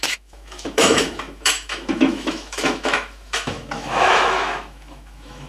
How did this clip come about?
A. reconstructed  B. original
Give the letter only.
A